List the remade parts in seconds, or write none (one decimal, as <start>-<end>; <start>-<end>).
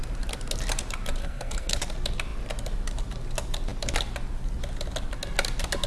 1.2-1.8